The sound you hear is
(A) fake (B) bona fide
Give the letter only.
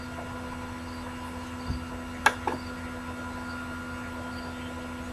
B